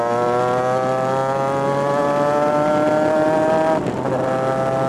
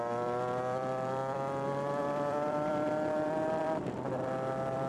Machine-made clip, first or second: second